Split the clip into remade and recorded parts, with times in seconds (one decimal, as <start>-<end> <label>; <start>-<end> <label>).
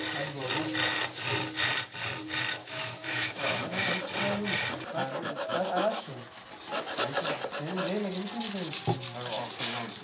0.0-2.6 recorded; 2.6-3.6 remade; 3.6-5.5 recorded; 5.5-6.1 remade; 6.1-10.0 recorded